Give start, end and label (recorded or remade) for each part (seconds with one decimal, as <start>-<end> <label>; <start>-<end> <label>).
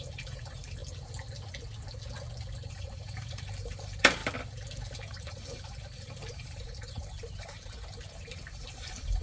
0.0-0.8 remade; 0.8-2.7 recorded; 2.7-4.2 remade; 4.2-4.9 recorded; 4.9-9.2 remade